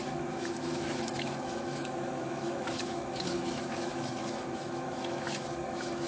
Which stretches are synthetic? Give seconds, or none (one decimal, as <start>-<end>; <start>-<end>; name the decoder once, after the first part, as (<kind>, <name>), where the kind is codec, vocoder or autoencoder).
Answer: 0.0-6.1 (autoencoder, DAC-VAE)